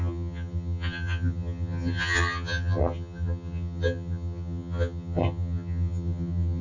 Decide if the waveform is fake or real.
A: fake